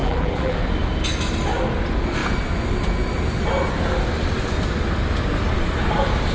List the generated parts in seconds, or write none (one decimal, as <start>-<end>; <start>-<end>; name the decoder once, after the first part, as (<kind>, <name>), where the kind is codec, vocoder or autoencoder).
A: 0.0-0.6 (vocoder, BigVGAN v2)